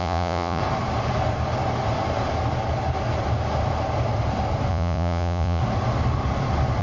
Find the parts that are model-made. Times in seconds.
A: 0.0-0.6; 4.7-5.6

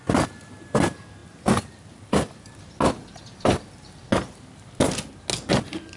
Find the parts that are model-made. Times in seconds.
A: none

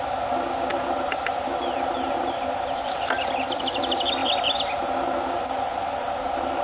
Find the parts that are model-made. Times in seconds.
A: 4.2-4.9

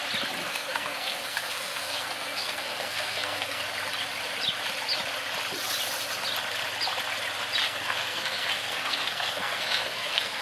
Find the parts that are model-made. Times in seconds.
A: 0.5-3.6; 7.6-10.4

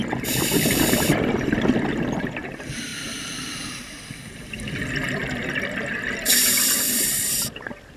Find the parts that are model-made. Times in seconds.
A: 2.4-8.0